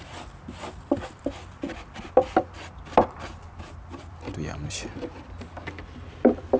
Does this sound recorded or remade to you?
recorded